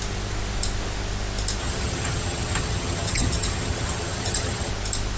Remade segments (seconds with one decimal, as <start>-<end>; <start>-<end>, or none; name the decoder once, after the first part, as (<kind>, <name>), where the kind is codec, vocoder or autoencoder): 1.6-4.7 (vocoder, HiFi-GAN)